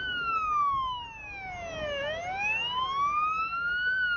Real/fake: real